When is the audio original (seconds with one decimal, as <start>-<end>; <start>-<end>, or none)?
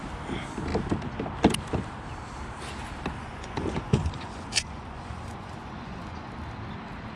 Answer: 0.0-3.2; 6.3-7.2